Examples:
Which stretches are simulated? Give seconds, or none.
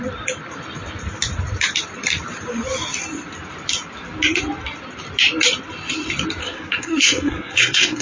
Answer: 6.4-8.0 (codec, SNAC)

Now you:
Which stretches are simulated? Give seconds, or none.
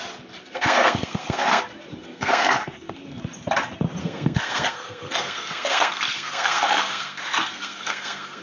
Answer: 0.4-1.6 (codec, SNAC); 2.0-3.2; 4.0-8.4